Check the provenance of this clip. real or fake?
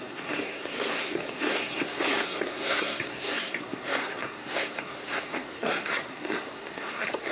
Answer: fake